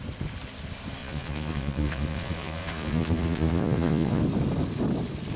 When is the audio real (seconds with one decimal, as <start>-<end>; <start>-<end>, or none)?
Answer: 0.0-1.0; 4.2-5.4